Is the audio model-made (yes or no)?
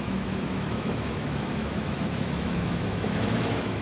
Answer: yes